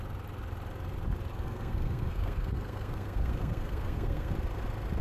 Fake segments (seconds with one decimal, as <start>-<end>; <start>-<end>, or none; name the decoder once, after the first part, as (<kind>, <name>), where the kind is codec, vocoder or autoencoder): 1.3-4.3 (codec, SNAC)